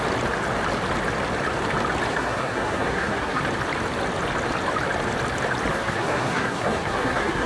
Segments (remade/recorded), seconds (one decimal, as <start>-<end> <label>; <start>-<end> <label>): 0.0-2.1 recorded; 2.1-3.4 remade; 3.4-5.7 recorded; 5.7-7.5 remade